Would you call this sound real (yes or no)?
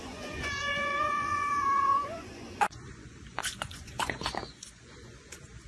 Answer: no